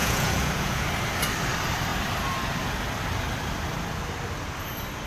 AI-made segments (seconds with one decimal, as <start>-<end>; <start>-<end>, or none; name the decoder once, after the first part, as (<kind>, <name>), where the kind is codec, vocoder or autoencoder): 0.0-0.9 (vocoder, Vocos)